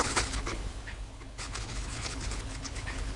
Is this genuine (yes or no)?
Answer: no